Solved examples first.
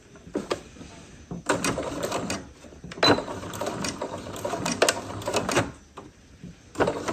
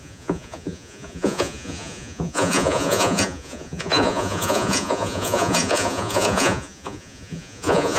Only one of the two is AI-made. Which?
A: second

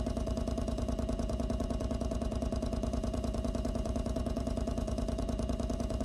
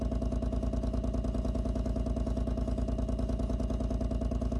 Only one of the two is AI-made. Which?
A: first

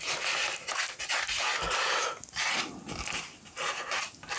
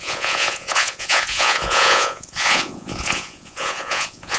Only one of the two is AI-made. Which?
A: second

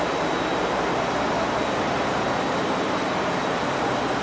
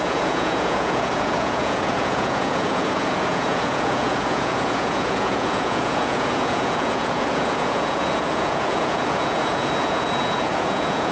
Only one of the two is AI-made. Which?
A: second